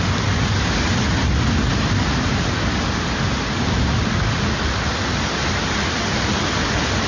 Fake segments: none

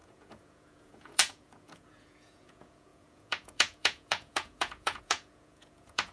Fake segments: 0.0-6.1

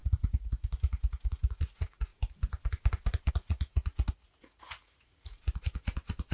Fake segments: 0.0-2.1; 3.3-6.3

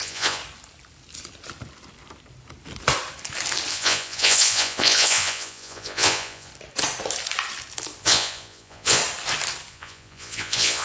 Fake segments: 0.0-0.4; 3.7-6.5; 8.0-9.0; 9.7-10.8